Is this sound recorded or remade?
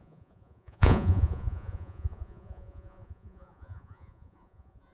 remade